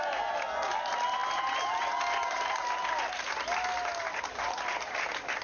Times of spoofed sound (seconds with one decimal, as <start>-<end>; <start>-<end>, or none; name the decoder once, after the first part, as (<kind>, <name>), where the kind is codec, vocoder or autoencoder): none